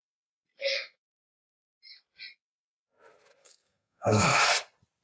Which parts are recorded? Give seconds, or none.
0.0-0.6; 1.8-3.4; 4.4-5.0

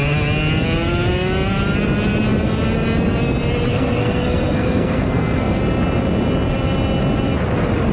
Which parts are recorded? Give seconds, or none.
0.0-3.7; 5.6-7.9